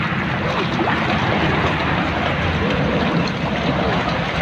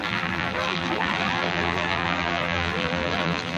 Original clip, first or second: first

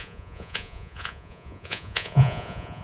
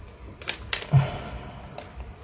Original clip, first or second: second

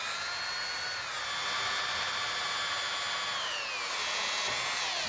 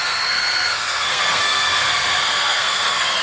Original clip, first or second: first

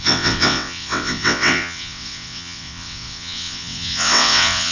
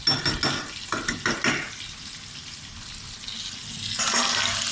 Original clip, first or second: second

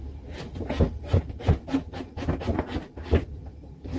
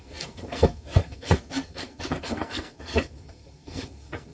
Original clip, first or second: first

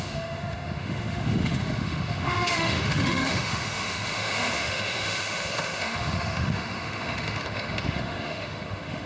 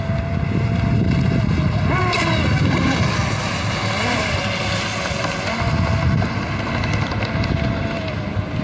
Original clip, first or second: second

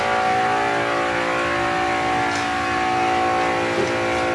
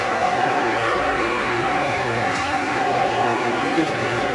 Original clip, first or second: first